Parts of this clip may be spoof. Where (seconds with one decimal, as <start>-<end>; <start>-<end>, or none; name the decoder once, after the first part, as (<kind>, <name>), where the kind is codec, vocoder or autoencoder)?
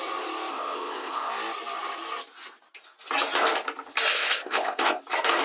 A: 0.5-1.3 (codec, ZipCodec); 4.1-5.0